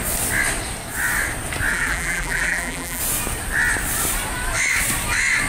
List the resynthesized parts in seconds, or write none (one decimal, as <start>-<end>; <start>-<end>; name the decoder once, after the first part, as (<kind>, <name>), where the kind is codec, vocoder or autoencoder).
1.7-3.0 (vocoder, BigVGAN v2)